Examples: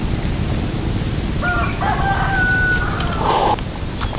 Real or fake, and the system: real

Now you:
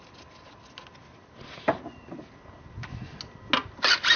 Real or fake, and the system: real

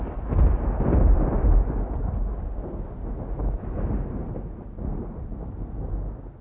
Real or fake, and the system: real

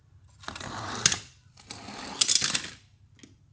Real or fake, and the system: real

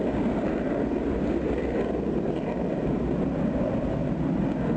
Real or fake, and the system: real